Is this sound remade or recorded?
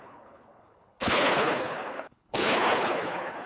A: remade